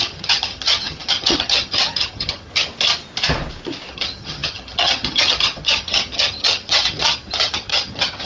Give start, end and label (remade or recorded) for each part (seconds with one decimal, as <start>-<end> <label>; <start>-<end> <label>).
0.0-2.5 remade; 2.5-3.9 recorded; 3.9-8.2 remade